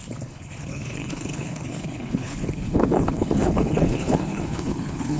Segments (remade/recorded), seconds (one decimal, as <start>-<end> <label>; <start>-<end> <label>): 0.0-5.2 remade